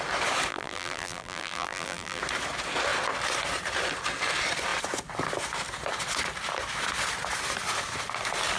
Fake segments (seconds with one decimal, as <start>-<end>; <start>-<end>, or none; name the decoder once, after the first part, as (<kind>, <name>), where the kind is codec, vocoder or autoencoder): 0.5-2.2 (vocoder, BigVGAN v2)